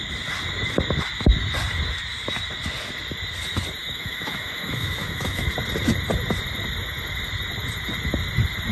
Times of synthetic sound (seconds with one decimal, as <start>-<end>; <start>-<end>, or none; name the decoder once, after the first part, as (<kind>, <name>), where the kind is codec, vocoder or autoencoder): 3.8-5.5 (autoencoder, DAC-VAE)